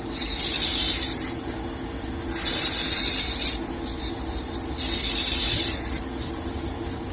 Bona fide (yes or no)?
yes